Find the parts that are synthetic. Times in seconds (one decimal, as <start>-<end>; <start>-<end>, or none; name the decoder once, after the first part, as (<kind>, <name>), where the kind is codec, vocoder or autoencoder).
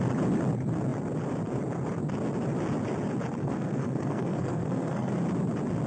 3.4-5.1 (codec, SNAC)